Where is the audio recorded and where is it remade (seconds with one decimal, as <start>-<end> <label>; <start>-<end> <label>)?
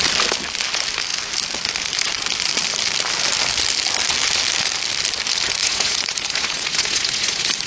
0.0-5.6 recorded; 5.6-7.7 remade